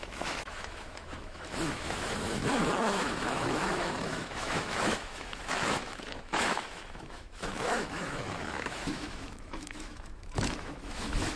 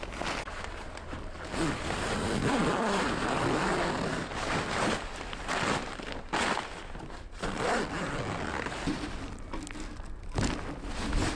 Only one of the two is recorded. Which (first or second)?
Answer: second